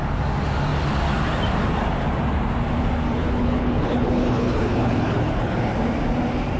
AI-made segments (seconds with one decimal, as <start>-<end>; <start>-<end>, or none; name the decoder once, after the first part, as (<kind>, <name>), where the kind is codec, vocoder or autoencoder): 3.2-5.7 (codec, HILCodec)